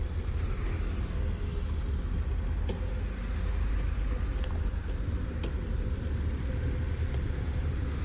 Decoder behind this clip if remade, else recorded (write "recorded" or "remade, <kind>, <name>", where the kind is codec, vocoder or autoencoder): recorded